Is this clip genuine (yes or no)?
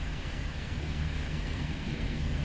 no